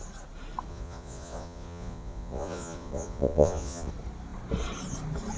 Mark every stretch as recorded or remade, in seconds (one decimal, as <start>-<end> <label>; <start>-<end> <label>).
0.0-0.7 recorded; 0.7-3.9 remade; 3.9-5.4 recorded